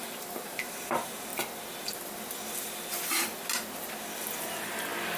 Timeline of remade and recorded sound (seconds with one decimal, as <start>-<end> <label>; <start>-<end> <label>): 0.0-1.3 remade; 1.3-4.4 recorded; 4.4-5.2 remade